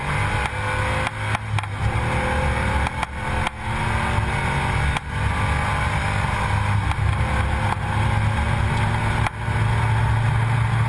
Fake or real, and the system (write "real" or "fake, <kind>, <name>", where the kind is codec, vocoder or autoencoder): real